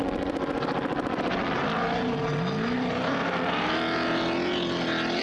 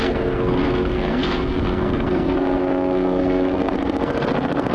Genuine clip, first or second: first